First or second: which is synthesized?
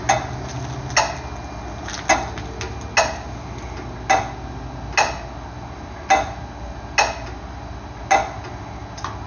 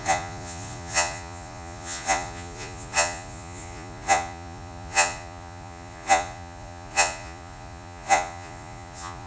second